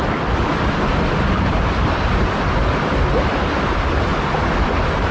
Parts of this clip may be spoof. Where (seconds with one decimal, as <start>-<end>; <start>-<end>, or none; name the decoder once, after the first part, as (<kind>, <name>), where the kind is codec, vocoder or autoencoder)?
none